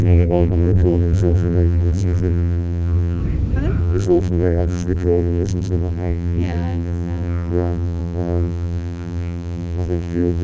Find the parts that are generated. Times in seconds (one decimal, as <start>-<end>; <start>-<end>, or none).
0.0-3.2; 3.8-10.4